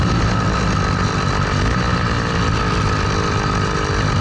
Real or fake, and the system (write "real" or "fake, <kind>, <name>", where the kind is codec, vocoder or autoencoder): real